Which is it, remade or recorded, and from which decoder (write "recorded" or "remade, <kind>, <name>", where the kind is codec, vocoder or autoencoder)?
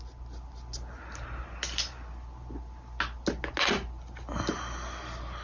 recorded